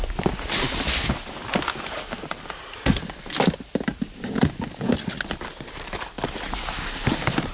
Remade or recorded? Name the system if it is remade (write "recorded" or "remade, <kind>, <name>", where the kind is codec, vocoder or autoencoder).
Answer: recorded